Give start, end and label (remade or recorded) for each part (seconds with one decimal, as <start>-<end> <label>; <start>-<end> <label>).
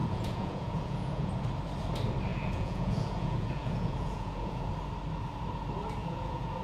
0.0-1.3 remade; 1.3-2.3 recorded; 2.3-4.7 remade; 4.7-6.0 recorded; 6.0-6.6 remade